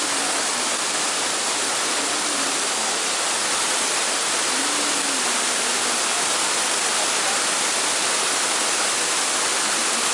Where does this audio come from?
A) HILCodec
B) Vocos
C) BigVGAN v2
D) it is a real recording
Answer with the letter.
D